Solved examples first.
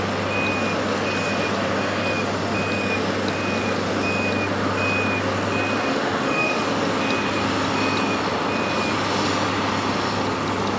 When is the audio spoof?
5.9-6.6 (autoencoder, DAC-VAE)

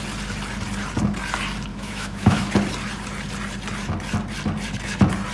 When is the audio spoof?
1.7-2.5 (autoencoder, DAC-VAE)

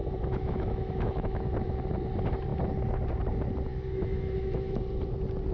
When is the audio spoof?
0.0-1.8 (autoencoder, DAC-VAE); 3.7-4.8

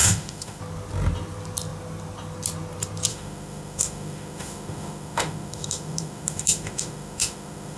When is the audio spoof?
0.0-0.6 (autoencoder, DAC-VAE); 3.1-7.8

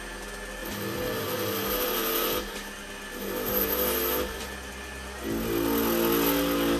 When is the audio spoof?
none

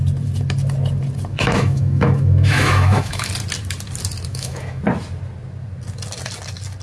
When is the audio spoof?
1.3-3.3 (autoencoder, DAC-VAE); 4.3-4.8